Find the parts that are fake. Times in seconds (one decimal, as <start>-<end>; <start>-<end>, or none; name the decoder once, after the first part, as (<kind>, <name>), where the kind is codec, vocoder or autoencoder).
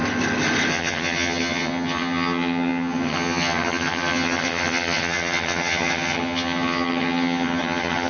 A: 0.7-8.1 (vocoder, HiFi-GAN)